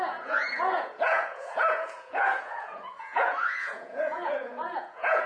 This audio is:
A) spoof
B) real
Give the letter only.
A